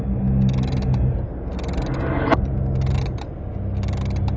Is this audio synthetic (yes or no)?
no